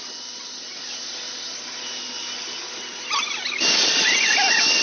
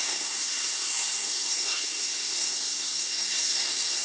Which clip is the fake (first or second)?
second